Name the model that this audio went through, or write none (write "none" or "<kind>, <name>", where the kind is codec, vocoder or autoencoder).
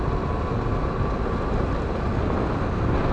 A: none